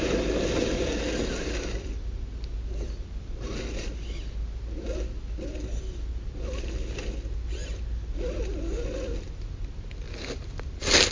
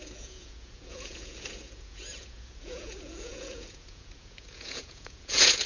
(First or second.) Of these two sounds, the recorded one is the first